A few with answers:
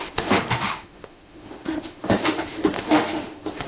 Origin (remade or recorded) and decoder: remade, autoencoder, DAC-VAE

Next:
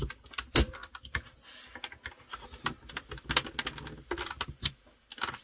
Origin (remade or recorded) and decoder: recorded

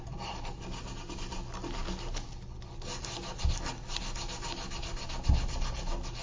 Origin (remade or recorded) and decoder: recorded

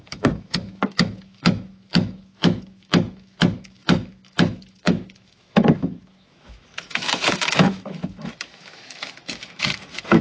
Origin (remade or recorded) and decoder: remade, autoencoder, DAC-VAE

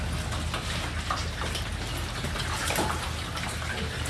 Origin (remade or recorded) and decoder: recorded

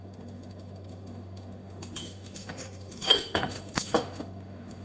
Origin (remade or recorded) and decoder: remade, autoencoder, DAC-VAE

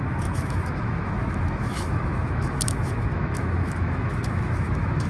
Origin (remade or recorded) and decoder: remade, autoencoder, DAC-VAE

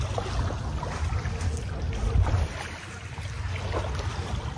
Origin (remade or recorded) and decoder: recorded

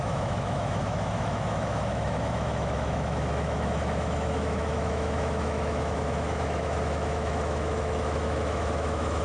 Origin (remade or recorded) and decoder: remade, autoencoder, DAC-VAE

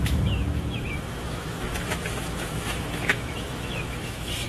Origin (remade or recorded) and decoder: remade, autoencoder, DAC-VAE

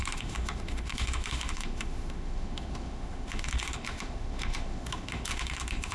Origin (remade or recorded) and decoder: remade, autoencoder, DAC-VAE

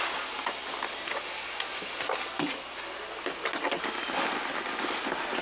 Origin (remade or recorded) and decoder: recorded